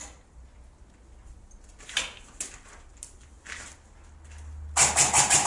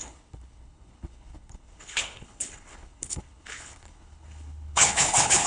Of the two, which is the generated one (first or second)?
second